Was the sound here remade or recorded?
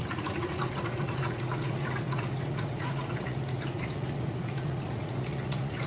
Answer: remade